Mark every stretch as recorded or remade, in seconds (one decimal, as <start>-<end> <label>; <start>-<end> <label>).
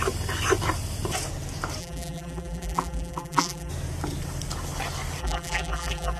0.0-1.8 recorded; 1.8-3.7 remade; 3.7-5.2 recorded; 5.2-6.2 remade